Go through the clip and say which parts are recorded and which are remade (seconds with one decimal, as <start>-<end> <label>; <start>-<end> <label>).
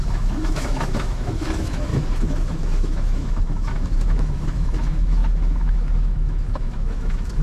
0.0-7.4 remade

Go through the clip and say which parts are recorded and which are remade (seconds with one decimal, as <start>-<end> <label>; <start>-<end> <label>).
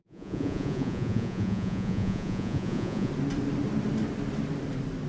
0.0-3.1 remade; 3.1-5.1 recorded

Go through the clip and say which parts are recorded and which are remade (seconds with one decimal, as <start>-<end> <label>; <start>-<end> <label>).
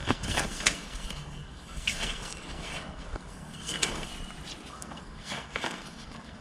0.0-4.1 remade; 4.1-4.7 recorded; 4.7-6.4 remade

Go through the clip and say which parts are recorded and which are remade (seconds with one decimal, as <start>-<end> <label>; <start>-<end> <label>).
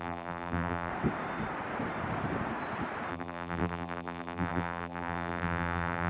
0.0-0.9 remade; 0.9-3.1 recorded; 3.1-6.1 remade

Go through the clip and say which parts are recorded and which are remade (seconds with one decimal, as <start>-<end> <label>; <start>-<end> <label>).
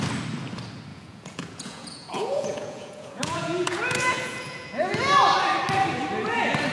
0.0-0.9 recorded; 0.9-4.9 remade; 4.9-6.7 recorded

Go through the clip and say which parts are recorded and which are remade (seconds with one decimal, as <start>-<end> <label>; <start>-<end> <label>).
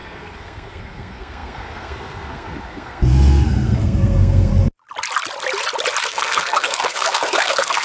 0.0-4.5 remade; 4.5-6.0 recorded; 6.0-7.8 remade